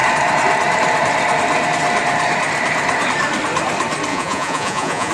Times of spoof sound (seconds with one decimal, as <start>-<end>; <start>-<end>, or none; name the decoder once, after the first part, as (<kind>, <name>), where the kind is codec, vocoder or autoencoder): 4.1-5.1 (vocoder, Vocos)